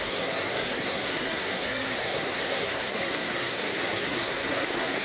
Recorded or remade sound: remade